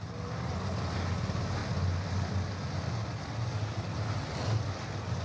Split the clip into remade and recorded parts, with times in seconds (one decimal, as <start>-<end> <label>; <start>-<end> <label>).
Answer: 0.0-5.2 recorded